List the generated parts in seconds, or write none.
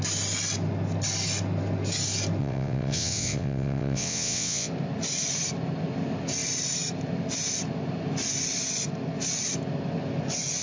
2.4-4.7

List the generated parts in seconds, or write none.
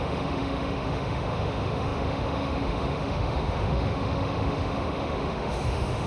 0.0-6.1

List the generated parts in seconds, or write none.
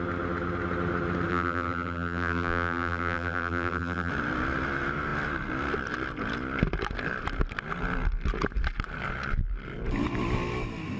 1.3-4.1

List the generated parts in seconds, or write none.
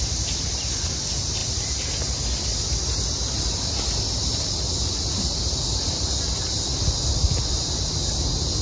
none